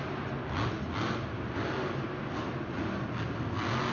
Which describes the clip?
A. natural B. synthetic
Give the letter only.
A